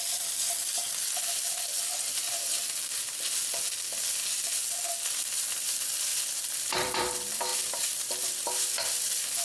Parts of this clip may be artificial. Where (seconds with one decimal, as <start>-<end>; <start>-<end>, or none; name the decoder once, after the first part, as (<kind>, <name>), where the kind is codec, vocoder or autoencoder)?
0.0-0.8 (vocoder, BigVGAN v2); 5.5-6.1; 6.6-9.4